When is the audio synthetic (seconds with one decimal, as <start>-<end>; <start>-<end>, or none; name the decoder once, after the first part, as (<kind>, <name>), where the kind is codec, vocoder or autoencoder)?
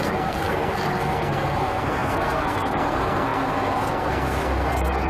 0.0-5.1 (codec, SNAC)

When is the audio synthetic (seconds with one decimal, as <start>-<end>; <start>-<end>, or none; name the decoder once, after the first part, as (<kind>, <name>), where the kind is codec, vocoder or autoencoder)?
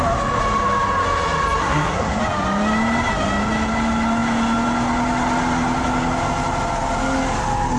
1.6-2.2 (codec, SNAC)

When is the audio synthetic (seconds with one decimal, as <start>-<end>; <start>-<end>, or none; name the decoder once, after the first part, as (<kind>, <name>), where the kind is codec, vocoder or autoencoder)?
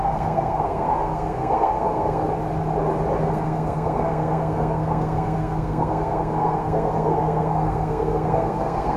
0.0-2.3 (codec, SNAC); 3.2-9.0